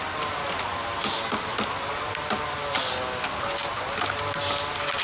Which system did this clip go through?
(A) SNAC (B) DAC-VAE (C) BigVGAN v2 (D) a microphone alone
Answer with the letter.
D